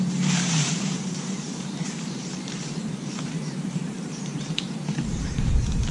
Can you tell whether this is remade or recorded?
remade